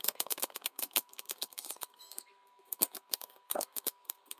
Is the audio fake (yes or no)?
yes